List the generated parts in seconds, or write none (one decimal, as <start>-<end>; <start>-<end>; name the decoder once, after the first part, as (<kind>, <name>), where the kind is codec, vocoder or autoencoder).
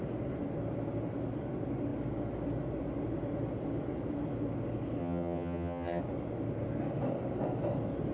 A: 5.0-6.0 (vocoder, HiFi-GAN)